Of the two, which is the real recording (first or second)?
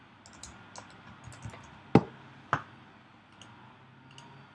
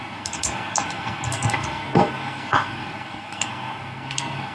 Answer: first